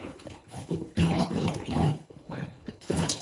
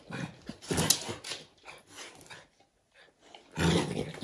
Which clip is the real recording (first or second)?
second